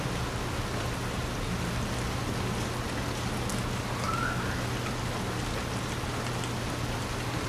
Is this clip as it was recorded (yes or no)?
yes